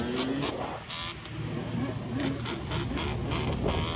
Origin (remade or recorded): recorded